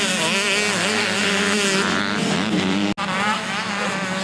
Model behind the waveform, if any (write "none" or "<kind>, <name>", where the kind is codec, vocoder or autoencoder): none